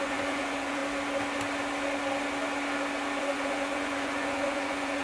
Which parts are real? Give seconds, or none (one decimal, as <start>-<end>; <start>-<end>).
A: 0.8-3.2